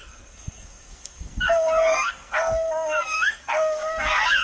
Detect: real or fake fake